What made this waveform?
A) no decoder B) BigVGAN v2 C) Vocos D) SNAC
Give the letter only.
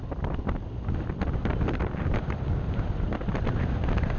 B